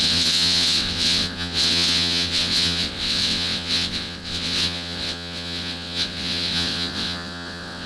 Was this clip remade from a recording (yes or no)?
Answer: yes